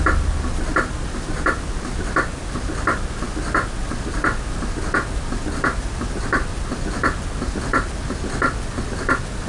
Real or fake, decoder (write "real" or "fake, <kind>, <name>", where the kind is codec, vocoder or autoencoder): real